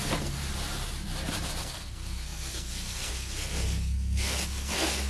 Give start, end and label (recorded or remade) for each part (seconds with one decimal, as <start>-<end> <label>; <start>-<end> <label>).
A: 0.0-0.4 remade; 0.4-1.6 recorded; 1.6-5.1 remade